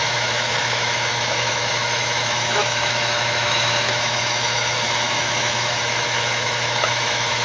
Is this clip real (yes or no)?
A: no